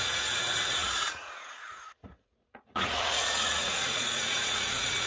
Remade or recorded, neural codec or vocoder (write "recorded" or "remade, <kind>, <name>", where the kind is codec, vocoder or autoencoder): remade, vocoder, Vocos